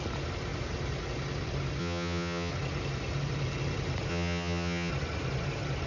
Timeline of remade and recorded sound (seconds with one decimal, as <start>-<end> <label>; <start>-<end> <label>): 0.0-1.8 recorded; 1.8-2.5 remade; 2.5-4.1 recorded; 4.1-4.9 remade; 4.9-5.9 recorded